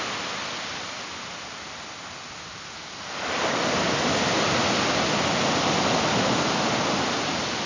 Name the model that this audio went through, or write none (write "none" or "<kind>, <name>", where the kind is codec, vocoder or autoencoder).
none